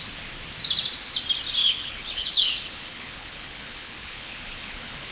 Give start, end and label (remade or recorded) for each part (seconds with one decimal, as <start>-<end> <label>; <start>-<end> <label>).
0.0-1.6 recorded; 1.6-5.1 remade